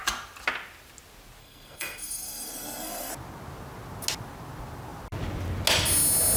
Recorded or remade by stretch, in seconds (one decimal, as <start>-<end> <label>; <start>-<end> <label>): 0.0-1.4 recorded; 1.4-3.1 remade; 3.1-6.4 recorded